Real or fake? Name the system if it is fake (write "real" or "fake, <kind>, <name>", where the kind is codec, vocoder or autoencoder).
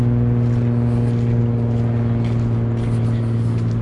real